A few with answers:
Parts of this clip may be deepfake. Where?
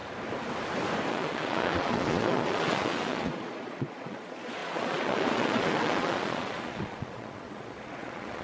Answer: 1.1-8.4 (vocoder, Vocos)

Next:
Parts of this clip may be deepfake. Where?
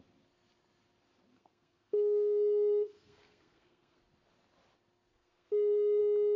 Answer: 1.3-4.0 (codec, SNAC); 5.1-6.0